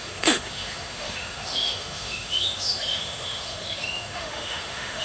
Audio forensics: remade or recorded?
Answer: remade